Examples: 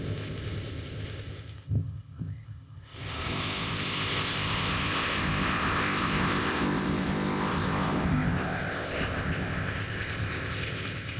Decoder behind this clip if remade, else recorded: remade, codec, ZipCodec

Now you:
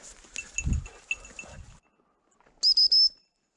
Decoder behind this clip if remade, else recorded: recorded